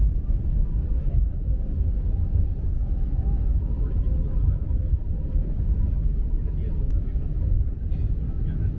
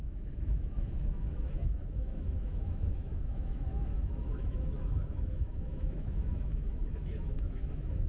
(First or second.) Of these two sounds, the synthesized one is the second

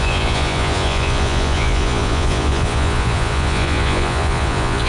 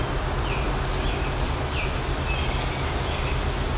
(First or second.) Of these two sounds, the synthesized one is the first